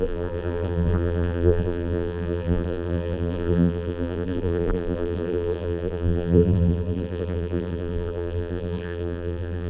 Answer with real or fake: fake